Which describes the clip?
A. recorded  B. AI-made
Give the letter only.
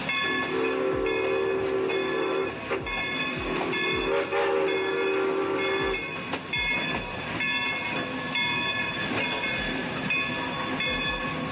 A